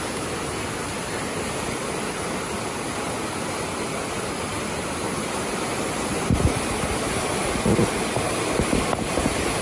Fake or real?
real